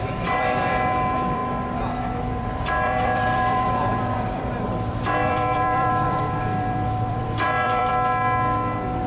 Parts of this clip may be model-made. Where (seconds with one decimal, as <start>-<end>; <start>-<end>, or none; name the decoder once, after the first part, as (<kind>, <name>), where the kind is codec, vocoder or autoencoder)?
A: 0.0-1.4 (vocoder, BigVGAN v2); 2.3-7.9